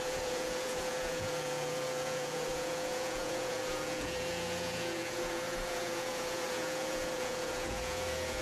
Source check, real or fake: fake